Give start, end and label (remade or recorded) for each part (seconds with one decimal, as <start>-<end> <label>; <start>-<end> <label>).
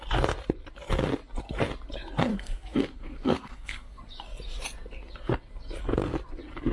0.0-2.3 recorded; 2.3-4.0 remade; 4.0-6.7 recorded